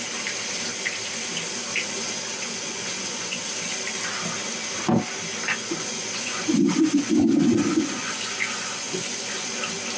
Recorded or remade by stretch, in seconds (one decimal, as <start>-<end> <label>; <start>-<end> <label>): 0.0-2.3 recorded; 2.3-3.4 remade; 3.4-5.5 recorded; 5.5-9.6 remade; 9.6-10.0 recorded